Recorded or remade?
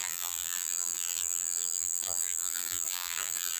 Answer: remade